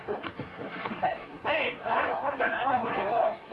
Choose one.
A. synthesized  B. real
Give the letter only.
A